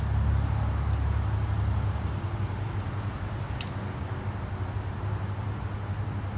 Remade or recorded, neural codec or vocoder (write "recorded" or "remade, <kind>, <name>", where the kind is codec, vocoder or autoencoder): recorded